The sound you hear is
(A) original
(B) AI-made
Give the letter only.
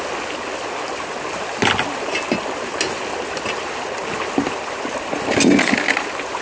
A